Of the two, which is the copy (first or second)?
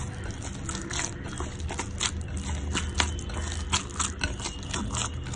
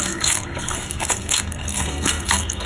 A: second